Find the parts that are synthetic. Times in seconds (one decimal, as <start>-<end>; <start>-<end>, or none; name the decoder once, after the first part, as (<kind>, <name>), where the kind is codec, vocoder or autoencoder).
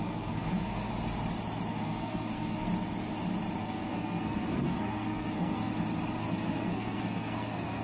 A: 0.0-0.9 (codec, SNAC); 1.7-2.7; 3.6-5.7; 6.2-7.8